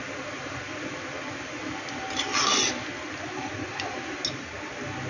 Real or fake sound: real